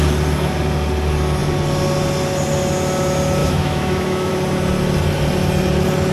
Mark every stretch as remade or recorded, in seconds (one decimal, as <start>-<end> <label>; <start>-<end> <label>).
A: 0.0-3.4 recorded; 3.4-4.3 remade; 4.3-6.1 recorded